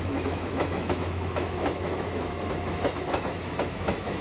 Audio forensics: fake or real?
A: fake